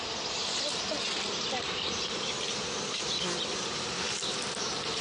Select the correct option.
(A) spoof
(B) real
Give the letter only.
B